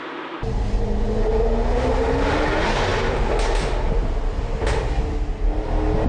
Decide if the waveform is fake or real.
real